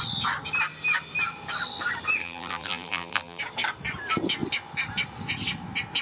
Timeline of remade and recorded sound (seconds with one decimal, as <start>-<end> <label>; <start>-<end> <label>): 0.0-2.2 recorded; 2.2-3.4 remade; 3.4-6.0 recorded